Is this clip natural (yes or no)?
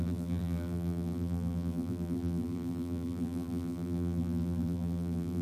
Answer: no